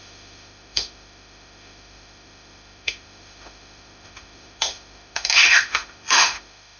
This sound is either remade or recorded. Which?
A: remade